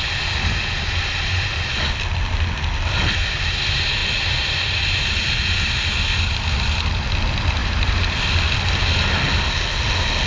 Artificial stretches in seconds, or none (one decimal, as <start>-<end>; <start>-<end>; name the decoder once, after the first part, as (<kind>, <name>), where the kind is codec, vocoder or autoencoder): 7.6-8.2 (vocoder, BigVGAN v2)